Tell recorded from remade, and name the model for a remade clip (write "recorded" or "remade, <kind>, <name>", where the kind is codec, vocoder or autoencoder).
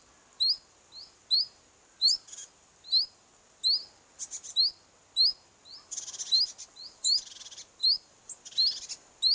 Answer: recorded